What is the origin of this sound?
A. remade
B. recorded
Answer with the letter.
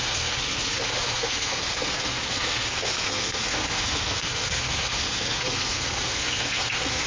A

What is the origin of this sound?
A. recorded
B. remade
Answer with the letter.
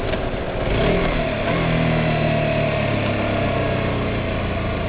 A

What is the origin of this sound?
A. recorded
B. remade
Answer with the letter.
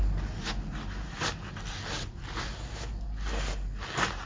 A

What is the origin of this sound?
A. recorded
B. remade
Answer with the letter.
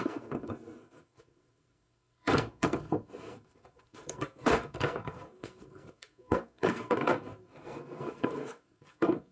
B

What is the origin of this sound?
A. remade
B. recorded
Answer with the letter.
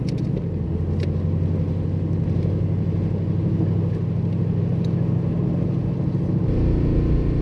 B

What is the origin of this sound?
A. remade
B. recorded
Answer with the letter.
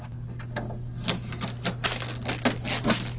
B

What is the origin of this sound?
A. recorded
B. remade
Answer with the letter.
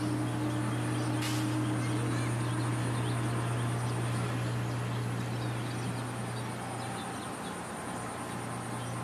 A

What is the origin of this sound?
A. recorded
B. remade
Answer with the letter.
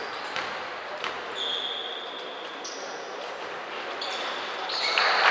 A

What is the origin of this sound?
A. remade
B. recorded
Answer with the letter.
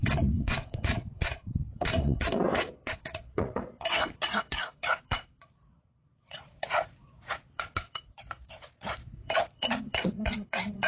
A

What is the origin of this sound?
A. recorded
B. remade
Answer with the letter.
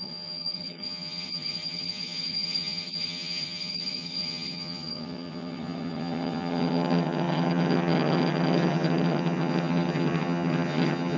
B